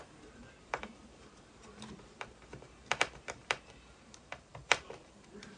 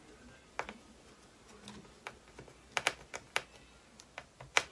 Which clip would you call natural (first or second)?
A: second